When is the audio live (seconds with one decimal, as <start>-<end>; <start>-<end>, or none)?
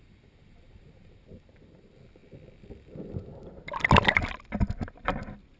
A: 0.0-5.6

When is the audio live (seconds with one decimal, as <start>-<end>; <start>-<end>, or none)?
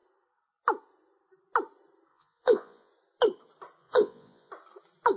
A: 0.0-2.1; 2.9-3.8; 4.5-5.2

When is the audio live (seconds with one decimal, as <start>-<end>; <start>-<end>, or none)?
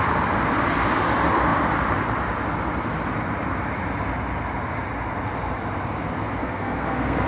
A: 0.0-6.4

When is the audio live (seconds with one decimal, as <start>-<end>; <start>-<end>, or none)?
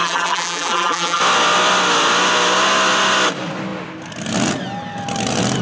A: 1.2-5.6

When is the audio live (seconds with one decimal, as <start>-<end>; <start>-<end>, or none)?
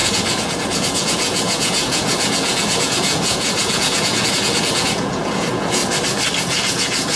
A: 5.8-6.4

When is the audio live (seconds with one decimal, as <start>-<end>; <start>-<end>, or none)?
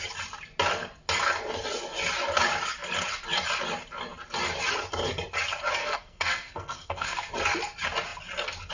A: 0.0-5.8; 7.3-8.7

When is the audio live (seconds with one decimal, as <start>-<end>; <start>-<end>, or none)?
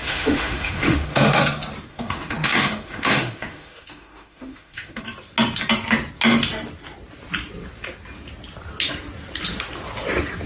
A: 1.4-1.9; 5.0-10.5